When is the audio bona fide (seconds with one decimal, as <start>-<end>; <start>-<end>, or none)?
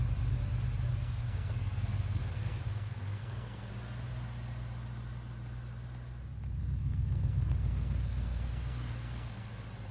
0.0-0.9; 3.7-6.6; 9.5-9.9